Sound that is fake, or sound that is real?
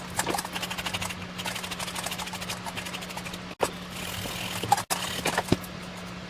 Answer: real